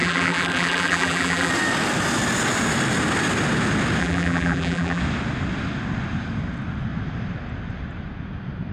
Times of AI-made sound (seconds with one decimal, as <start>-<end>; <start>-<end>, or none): 0.0-1.5; 4.0-5.0